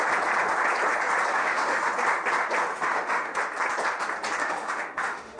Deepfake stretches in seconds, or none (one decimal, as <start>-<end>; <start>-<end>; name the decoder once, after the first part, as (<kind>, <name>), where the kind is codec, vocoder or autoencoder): 1.3-1.9 (autoencoder, DAC-VAE); 2.7-3.4; 4.4-5.4